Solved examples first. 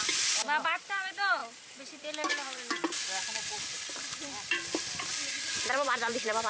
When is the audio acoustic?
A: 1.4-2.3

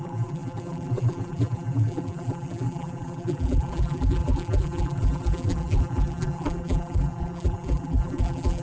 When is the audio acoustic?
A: none